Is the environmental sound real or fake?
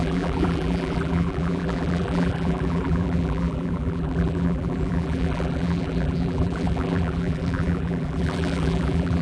fake